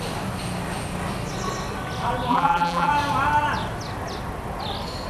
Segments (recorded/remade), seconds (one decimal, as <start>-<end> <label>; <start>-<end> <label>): 0.0-2.3 recorded; 2.3-2.9 remade; 2.9-5.1 recorded